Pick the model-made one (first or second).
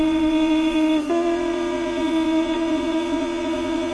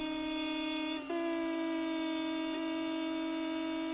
first